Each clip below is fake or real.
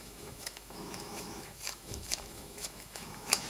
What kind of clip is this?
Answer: fake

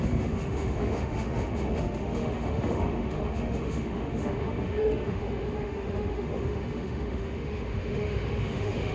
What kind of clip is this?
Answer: fake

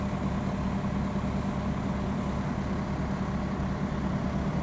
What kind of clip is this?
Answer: real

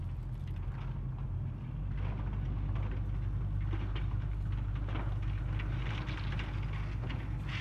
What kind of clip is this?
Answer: real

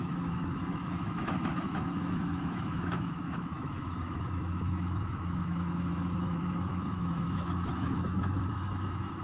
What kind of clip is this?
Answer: fake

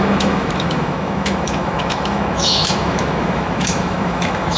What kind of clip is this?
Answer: fake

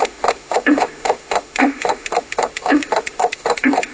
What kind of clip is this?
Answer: fake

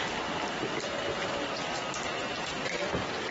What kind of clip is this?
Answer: real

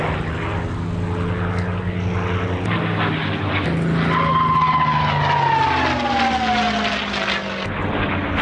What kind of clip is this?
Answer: real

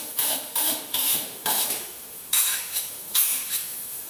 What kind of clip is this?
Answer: fake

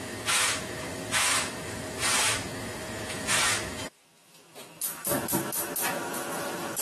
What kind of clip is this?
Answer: fake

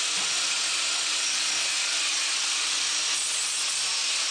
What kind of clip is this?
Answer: real